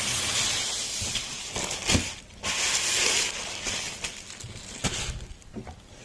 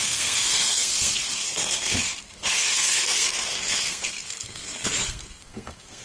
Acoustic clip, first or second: first